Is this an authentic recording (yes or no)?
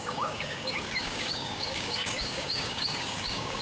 no